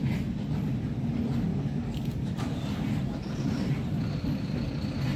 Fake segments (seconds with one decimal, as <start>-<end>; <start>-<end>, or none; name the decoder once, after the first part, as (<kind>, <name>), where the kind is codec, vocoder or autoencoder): 1.5-4.6 (vocoder, BigVGAN v2)